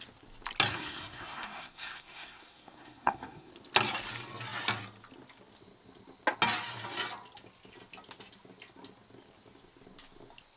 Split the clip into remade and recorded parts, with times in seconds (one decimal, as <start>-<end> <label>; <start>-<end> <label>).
0.0-0.7 recorded; 0.7-3.5 remade; 3.5-10.6 recorded